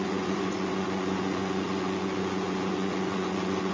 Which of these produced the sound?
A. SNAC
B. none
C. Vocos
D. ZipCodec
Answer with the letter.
C